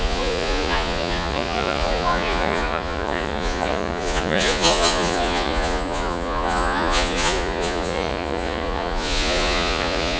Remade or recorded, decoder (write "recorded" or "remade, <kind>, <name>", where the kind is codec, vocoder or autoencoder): remade, vocoder, Vocos